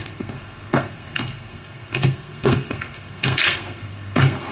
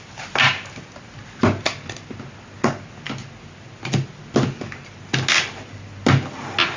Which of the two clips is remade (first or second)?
first